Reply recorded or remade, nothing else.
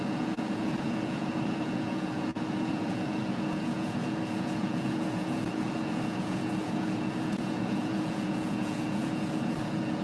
remade